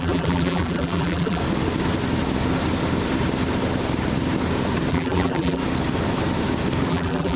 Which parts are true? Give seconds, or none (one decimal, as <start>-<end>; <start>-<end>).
1.4-4.9; 5.6-6.9